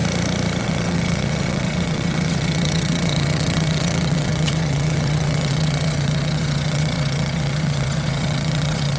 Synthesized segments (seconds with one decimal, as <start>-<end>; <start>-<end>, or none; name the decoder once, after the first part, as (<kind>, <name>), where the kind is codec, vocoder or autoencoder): 0.6-9.0 (vocoder, WaveNeXt)